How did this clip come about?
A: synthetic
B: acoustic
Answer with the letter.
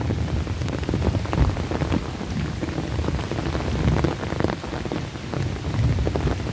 B